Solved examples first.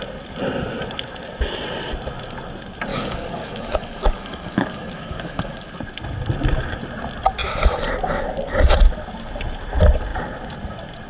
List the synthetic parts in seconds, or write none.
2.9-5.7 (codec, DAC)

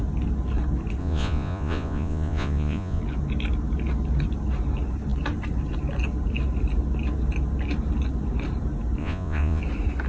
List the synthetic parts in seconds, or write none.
1.0-3.0 (vocoder, Vocos); 9.0-9.6